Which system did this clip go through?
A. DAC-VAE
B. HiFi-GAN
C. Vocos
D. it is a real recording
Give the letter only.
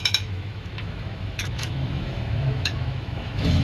A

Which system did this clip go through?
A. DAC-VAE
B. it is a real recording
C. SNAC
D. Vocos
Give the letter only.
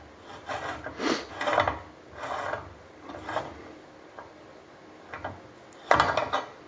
B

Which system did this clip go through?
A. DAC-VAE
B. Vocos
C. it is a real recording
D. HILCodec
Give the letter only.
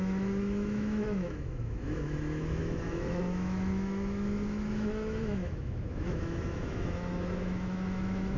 A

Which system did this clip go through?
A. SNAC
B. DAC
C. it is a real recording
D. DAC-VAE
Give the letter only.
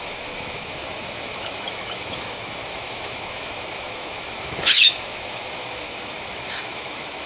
D